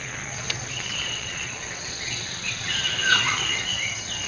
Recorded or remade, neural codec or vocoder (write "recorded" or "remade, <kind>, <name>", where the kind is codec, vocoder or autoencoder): remade, vocoder, WaveNeXt